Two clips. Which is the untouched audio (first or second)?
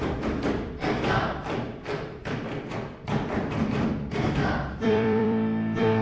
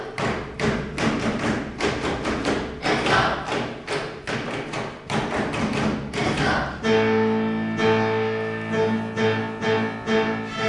second